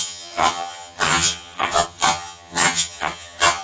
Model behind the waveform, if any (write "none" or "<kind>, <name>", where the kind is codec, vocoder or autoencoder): vocoder, HiFi-GAN